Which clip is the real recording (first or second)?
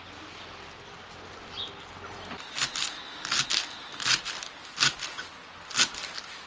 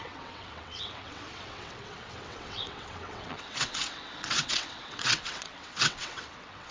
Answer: first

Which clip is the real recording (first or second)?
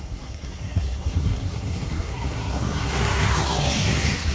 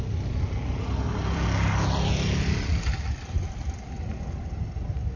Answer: second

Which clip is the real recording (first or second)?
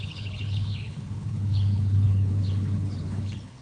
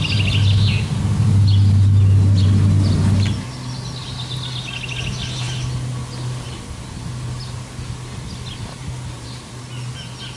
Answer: second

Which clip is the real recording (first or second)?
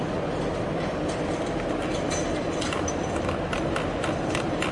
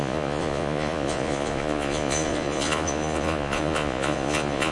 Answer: first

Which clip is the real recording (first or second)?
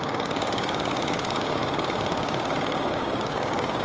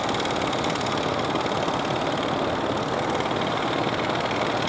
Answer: second